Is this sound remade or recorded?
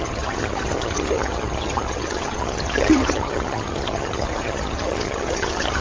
remade